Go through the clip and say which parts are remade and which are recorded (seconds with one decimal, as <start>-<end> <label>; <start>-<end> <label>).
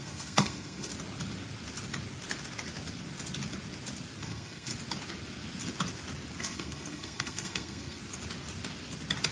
0.0-0.9 remade; 0.9-4.2 recorded; 4.2-4.7 remade; 4.7-6.4 recorded; 6.4-8.0 remade; 8.0-9.3 recorded